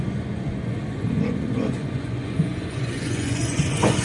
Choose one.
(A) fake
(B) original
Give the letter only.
A